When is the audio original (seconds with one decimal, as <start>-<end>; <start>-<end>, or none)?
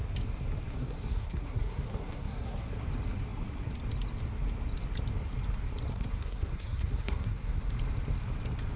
0.0-0.7; 2.7-5.9; 7.7-8.8